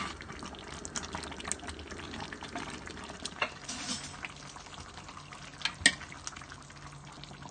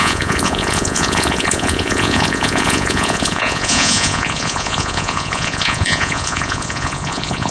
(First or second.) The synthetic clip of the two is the second